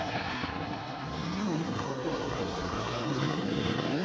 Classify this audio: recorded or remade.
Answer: remade